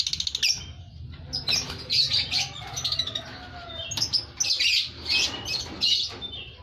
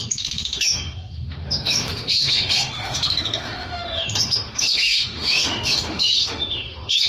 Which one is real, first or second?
first